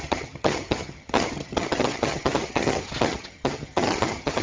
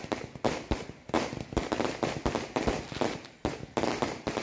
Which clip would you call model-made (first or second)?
first